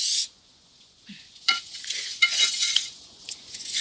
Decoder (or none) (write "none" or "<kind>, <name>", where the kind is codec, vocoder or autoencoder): vocoder, Vocos